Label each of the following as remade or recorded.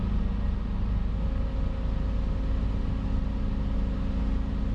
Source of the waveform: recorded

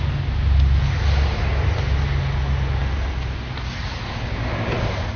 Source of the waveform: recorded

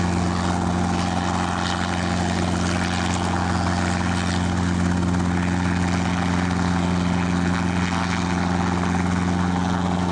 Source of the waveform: recorded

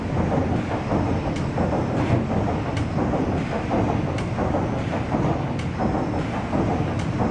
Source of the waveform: recorded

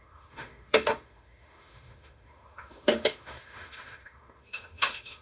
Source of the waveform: remade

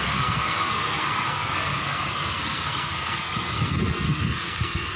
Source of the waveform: remade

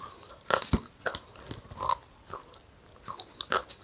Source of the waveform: recorded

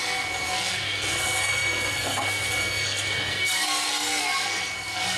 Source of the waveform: remade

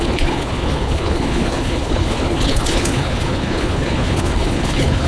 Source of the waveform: remade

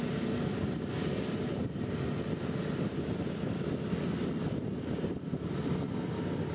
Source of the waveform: recorded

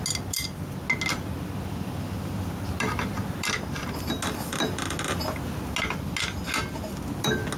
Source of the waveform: recorded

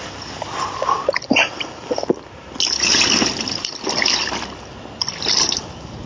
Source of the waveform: recorded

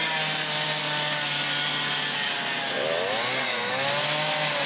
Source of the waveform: recorded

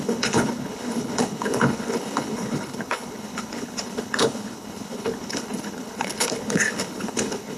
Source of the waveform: remade